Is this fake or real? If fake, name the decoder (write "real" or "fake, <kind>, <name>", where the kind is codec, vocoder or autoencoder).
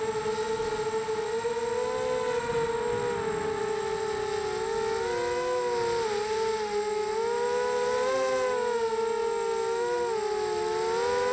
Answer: real